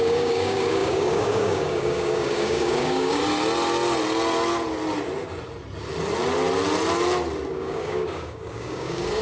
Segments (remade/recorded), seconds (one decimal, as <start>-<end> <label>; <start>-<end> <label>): 0.0-3.2 remade; 3.2-7.5 recorded; 7.5-9.2 remade